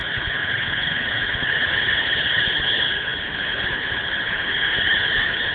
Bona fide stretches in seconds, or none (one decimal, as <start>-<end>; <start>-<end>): none

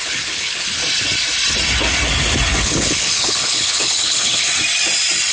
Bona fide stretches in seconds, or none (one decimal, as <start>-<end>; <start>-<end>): 0.8-2.6; 4.5-5.3

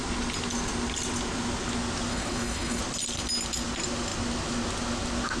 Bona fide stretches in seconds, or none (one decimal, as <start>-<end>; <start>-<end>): 0.0-2.1; 2.8-5.4

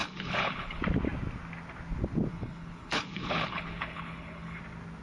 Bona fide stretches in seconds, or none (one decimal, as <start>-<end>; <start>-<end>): 0.8-2.3; 4.6-5.0

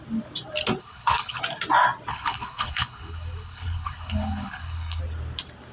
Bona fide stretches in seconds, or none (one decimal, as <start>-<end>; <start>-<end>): 0.0-0.8; 1.4-2.1; 5.0-5.7